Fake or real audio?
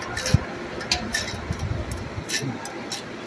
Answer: real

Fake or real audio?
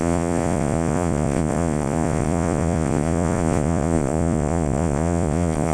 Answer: fake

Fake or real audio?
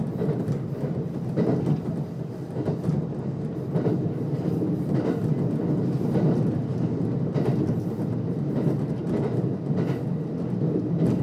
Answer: real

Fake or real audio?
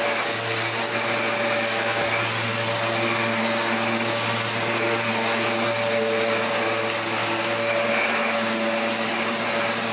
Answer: real